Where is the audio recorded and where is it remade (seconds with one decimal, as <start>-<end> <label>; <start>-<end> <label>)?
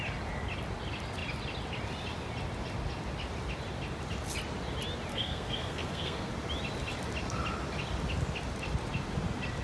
0.0-5.1 recorded; 5.1-6.3 remade; 6.3-9.6 recorded